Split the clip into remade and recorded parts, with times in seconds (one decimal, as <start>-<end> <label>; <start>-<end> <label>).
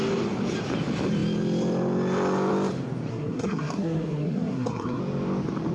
0.0-3.1 recorded; 3.1-5.0 remade; 5.0-5.7 recorded